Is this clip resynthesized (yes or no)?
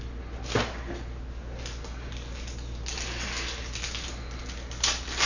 no